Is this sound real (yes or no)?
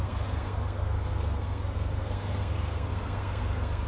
no